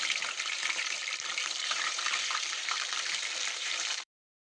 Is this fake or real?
fake